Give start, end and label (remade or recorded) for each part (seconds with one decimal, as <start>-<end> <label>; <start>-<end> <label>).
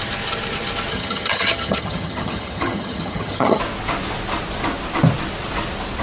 0.0-0.9 recorded; 0.9-3.6 remade; 3.6-6.0 recorded